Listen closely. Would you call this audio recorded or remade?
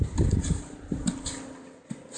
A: recorded